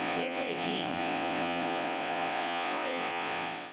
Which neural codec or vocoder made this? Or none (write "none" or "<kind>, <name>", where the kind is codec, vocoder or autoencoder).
vocoder, WaveNeXt